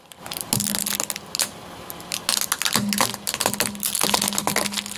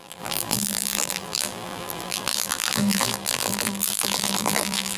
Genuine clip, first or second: first